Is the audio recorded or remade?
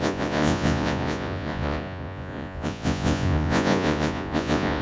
remade